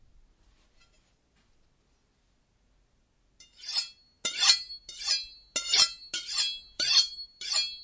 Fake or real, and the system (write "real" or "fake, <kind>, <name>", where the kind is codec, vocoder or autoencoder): real